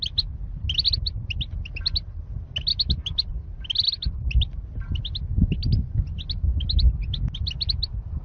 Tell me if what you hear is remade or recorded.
recorded